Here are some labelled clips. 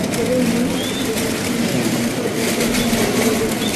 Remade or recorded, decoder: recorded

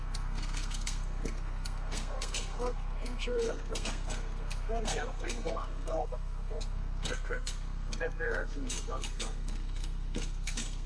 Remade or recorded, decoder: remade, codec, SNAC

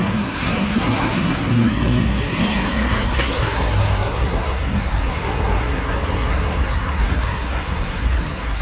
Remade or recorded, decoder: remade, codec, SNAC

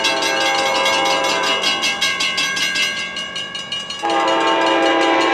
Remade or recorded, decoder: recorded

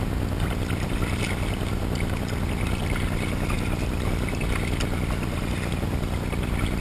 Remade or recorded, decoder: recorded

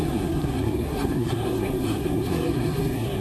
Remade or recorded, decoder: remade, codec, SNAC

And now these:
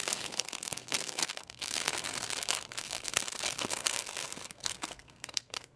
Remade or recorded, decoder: remade, codec, SNAC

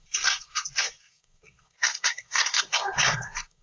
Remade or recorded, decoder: remade, codec, SNAC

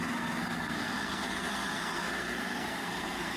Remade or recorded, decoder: remade, codec, SNAC